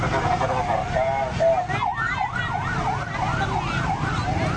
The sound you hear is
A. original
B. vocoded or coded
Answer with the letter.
A